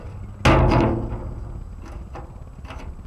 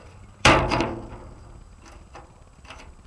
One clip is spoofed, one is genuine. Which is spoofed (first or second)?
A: second